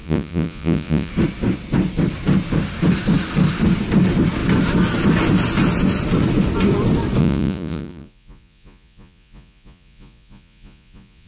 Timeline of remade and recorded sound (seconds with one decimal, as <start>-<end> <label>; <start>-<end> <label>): 0.0-1.1 remade; 1.1-7.2 recorded; 7.2-11.3 remade